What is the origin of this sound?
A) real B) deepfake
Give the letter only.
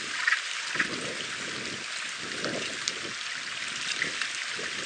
A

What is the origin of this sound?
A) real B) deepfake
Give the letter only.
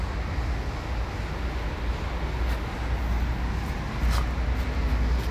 A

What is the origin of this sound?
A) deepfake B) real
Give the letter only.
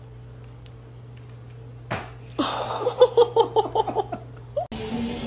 B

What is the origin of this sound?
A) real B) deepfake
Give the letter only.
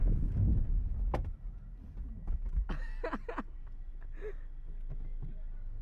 A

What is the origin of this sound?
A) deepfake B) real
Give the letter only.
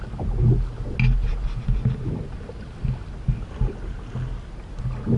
B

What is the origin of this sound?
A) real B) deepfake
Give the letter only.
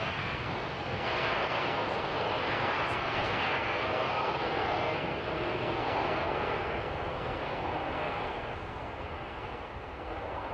B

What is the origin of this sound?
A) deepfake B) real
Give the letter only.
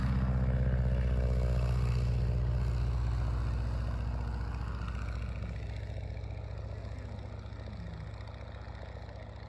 B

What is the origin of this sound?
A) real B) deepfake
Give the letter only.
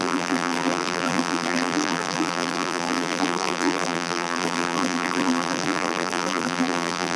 B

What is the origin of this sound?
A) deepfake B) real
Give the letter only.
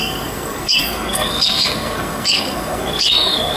A